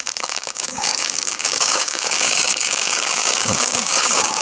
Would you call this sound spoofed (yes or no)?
yes